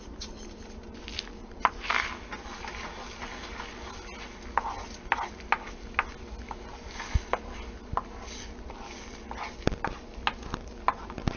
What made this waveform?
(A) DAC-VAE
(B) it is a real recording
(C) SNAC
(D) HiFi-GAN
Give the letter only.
B